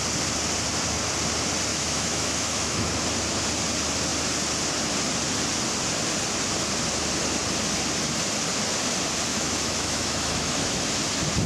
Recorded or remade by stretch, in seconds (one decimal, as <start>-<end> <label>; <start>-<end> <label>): 0.0-1.7 recorded; 1.7-2.9 remade; 2.9-9.3 recorded; 9.3-11.0 remade; 11.0-11.5 recorded